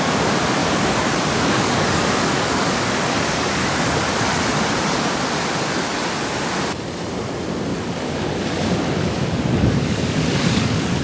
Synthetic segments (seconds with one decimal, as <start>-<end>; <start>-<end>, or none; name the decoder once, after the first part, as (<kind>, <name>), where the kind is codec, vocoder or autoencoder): 0.6-4.6 (codec, DAC); 7.7-11.0